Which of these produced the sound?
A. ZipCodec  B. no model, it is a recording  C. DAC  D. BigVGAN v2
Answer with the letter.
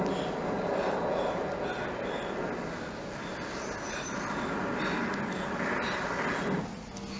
B